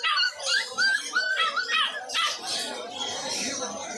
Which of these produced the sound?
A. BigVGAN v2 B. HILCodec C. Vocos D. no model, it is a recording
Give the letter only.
A